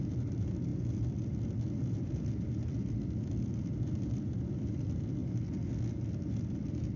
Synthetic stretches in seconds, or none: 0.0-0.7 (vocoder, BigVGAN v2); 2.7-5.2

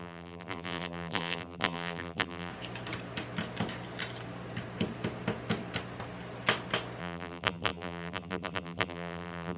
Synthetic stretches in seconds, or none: 0.0-2.5 (vocoder, BigVGAN v2); 7.0-9.6

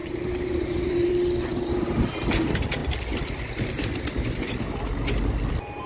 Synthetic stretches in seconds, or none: 0.0-1.1 (vocoder, BigVGAN v2); 1.5-2.1

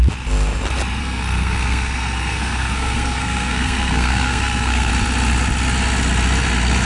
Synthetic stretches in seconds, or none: 1.0-4.9 (codec, SNAC)

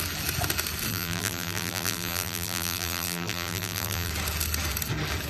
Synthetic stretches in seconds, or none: 0.9-4.1 (vocoder, BigVGAN v2)

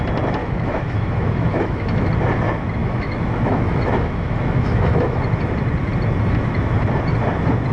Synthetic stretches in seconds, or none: 0.4-2.1 (autoencoder, DAC-VAE); 2.8-5.2

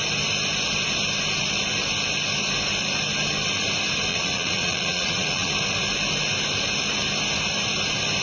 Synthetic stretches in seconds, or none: 4.1-5.5 (vocoder, Vocos)